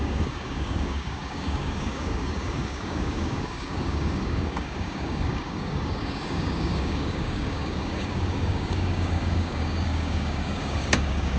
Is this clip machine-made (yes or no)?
yes